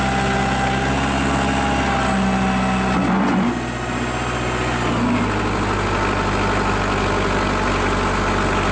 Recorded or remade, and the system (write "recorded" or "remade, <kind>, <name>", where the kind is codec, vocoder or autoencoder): recorded